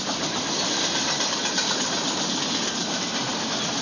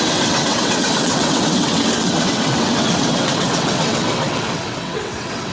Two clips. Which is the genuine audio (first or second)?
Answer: first